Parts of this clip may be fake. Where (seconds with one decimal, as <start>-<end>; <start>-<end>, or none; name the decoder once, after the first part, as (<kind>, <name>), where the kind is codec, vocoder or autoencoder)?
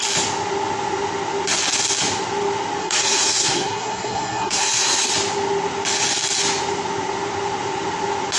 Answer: 2.8-5.1 (codec, SNAC)